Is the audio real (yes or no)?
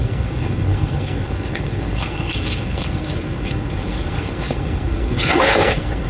no